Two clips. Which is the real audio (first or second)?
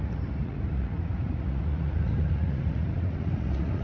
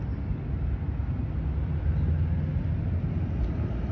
second